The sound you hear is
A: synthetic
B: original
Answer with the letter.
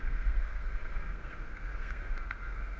A